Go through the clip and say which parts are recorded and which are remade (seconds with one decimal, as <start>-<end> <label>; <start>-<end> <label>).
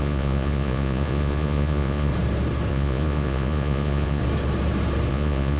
0.0-2.1 remade; 2.1-2.7 recorded; 2.7-4.2 remade; 4.2-5.1 recorded; 5.1-5.6 remade